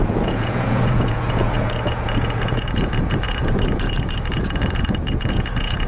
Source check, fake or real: fake